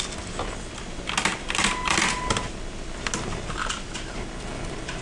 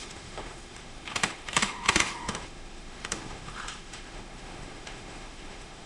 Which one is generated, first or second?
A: second